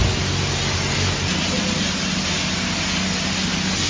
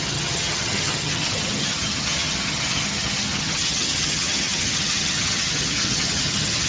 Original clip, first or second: first